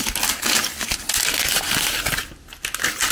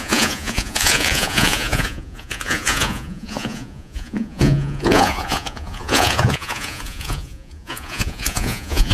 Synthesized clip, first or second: second